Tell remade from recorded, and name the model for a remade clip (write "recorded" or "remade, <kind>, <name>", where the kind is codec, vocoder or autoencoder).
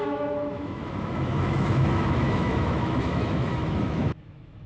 remade, autoencoder, DAC-VAE